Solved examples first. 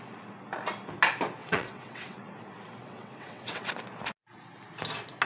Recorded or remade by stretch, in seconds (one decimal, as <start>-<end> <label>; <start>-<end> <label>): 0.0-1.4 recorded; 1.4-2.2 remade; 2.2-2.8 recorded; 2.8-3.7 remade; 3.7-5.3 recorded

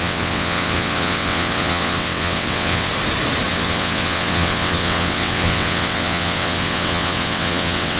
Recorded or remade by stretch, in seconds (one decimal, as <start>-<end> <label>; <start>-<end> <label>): 0.0-2.9 remade; 2.9-3.5 recorded; 3.5-8.0 remade

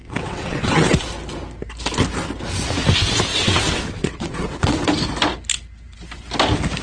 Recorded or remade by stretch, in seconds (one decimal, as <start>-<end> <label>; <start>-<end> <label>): 0.0-1.0 remade; 1.0-3.3 recorded; 3.3-5.0 remade; 5.0-6.8 recorded